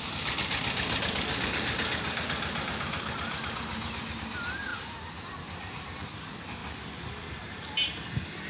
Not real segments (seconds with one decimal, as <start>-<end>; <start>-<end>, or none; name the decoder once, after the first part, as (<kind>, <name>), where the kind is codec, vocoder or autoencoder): 0.0-6.6 (vocoder, BigVGAN v2); 7.4-8.5

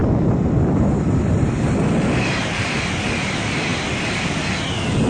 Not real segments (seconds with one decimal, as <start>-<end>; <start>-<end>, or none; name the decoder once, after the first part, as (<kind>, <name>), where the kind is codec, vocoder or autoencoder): 0.0-3.1 (vocoder, BigVGAN v2); 3.7-5.1